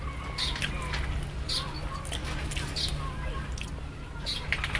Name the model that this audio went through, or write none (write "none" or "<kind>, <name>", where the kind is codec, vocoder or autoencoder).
none